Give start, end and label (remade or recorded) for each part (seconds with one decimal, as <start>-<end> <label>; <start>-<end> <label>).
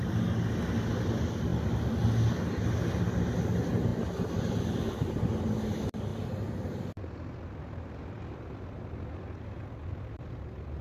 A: 0.0-10.8 recorded